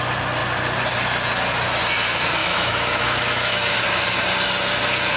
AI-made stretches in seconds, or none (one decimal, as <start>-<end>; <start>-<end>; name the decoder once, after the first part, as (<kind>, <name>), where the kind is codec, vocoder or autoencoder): 2.4-3.8 (autoencoder, DAC-VAE)